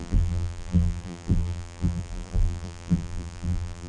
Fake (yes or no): yes